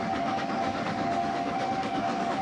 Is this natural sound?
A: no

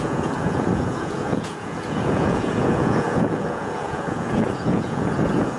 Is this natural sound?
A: no